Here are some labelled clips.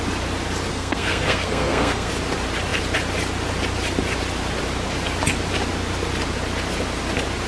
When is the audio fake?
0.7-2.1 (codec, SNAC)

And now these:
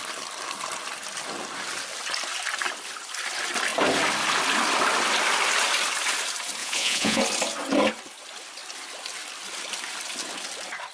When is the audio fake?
6.6-7.2 (vocoder, Vocos)

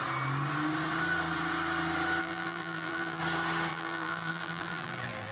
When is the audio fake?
2.2-3.2 (vocoder, BigVGAN v2); 3.7-5.3

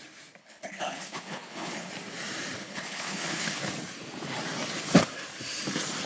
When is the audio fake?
0.4-1.9 (codec, HILCodec); 2.6-3.6

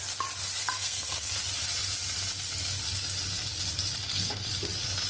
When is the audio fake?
0.6-1.3 (codec, SNAC); 4.0-4.5